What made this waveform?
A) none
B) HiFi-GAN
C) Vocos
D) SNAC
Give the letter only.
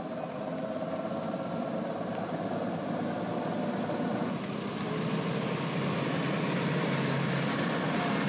A